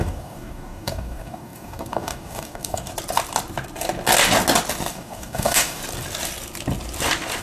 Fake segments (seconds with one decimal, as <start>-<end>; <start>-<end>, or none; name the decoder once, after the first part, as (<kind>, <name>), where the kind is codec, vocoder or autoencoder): 0.0-2.9 (codec, DAC); 4.9-5.8